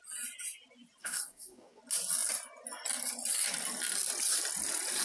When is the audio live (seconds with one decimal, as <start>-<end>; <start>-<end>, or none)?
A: 0.0-1.0; 1.8-5.0